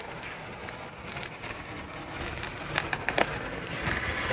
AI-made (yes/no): no